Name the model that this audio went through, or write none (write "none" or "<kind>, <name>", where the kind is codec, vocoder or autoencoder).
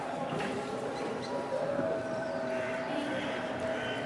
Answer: vocoder, BigVGAN v2